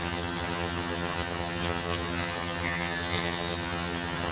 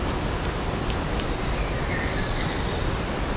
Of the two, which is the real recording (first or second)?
second